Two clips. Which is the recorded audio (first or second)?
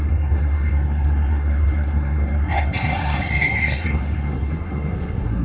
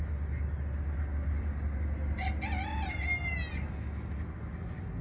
second